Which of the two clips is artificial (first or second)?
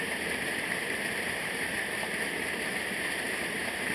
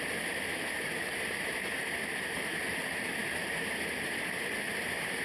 first